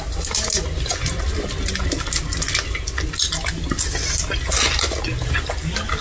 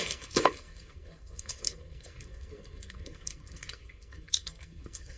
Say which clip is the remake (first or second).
second